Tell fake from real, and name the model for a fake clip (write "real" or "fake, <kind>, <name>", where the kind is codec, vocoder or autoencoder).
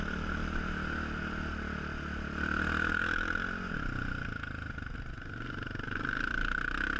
real